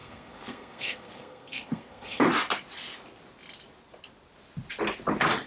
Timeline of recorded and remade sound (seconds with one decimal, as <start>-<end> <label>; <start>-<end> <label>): 0.0-2.2 remade; 2.2-5.5 recorded